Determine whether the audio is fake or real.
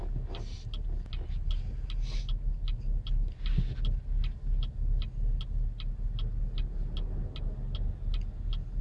real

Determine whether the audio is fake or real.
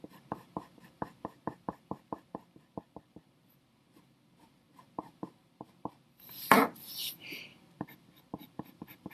fake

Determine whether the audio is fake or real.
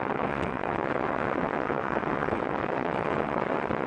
fake